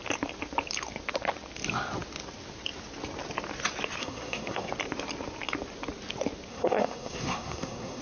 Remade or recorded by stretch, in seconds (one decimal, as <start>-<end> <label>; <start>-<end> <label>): 0.0-4.0 recorded; 4.0-4.7 remade; 4.7-6.5 recorded; 6.5-8.0 remade